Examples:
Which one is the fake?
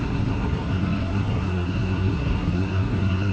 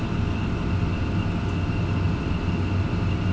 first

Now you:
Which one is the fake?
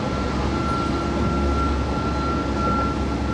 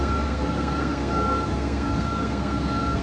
second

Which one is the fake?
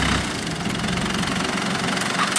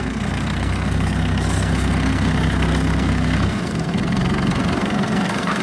second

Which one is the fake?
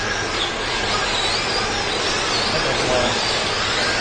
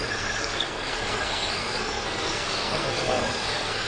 second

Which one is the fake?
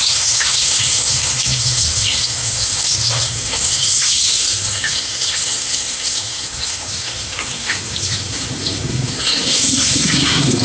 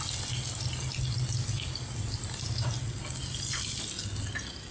first